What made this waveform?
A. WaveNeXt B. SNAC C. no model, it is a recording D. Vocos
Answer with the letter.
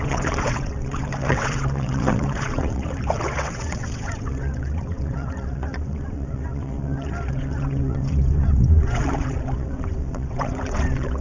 A